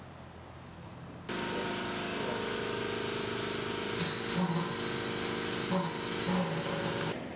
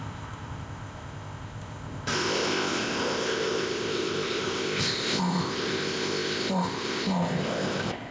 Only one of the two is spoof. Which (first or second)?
second